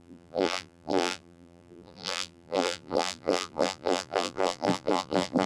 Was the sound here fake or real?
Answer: fake